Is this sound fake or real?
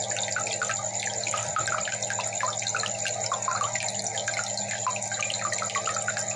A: real